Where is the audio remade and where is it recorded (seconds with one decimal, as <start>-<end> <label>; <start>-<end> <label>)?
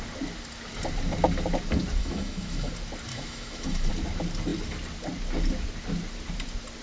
0.0-2.0 recorded; 2.0-2.7 remade; 2.7-3.1 recorded; 3.1-3.9 remade; 3.9-6.8 recorded